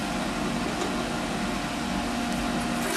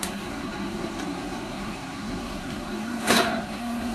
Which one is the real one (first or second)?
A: first